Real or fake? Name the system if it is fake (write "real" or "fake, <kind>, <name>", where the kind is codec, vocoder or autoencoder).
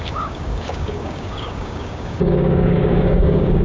fake, codec, DAC